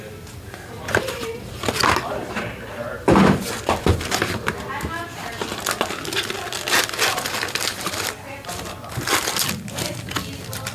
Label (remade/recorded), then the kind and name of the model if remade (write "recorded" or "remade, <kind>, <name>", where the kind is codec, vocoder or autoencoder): recorded